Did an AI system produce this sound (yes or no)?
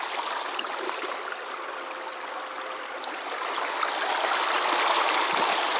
no